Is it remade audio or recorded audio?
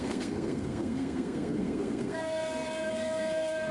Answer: remade